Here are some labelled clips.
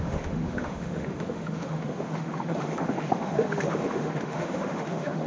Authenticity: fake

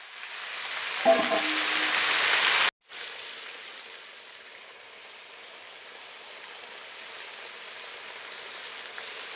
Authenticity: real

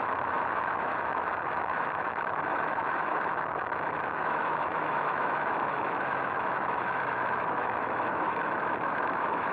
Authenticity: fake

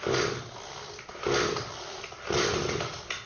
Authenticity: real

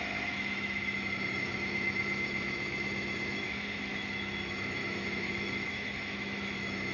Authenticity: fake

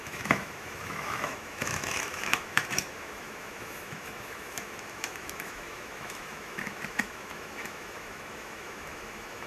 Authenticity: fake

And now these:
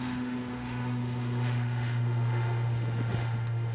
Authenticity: fake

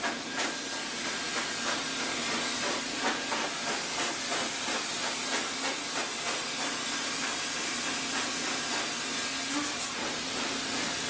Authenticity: real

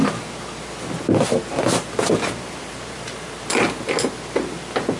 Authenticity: real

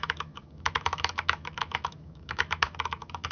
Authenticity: fake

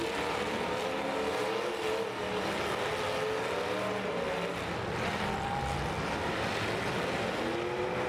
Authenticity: real